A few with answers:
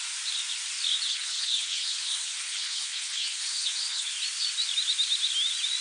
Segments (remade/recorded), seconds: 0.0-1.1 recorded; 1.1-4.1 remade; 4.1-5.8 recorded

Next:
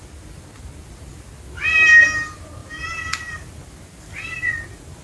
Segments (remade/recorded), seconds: 0.0-5.0 recorded

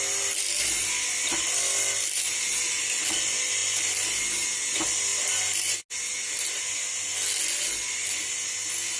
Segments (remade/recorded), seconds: 0.0-9.0 recorded

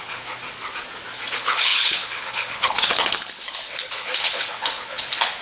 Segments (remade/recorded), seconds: 0.0-0.4 remade; 0.4-1.1 recorded; 1.1-5.4 remade

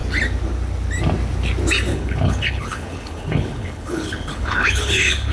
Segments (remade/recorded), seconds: 0.0-1.9 recorded; 1.9-5.3 remade

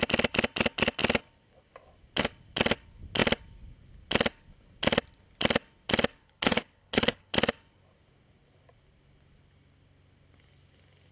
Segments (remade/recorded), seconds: 0.0-6.2 recorded; 6.2-7.3 remade; 7.3-11.1 recorded